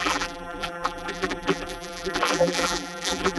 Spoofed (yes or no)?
yes